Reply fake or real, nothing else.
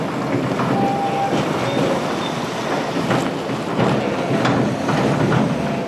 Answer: real